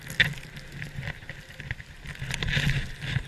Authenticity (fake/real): real